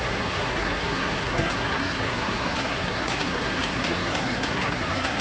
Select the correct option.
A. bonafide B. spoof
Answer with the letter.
B